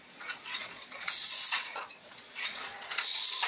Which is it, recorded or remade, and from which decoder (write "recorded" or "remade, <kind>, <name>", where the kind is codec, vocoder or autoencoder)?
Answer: remade, vocoder, Vocos